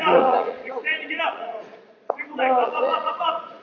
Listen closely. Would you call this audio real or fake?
fake